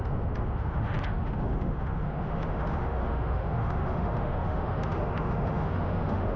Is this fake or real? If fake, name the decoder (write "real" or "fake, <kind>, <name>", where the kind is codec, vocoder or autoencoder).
fake, autoencoder, DAC-VAE